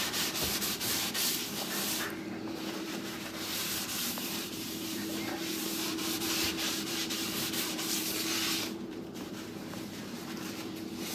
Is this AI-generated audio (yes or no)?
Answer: yes